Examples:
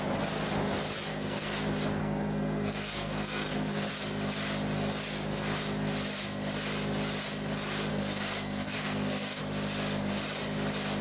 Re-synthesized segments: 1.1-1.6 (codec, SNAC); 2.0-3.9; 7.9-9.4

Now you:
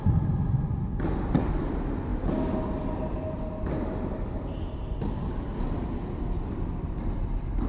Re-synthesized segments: none

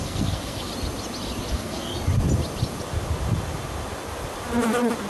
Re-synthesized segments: 0.0-0.7 (codec, SNAC); 1.5-1.9

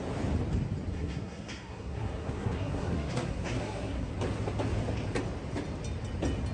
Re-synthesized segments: 0.9-4.1 (codec, SNAC)